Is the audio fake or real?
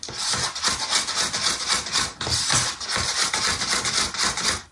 real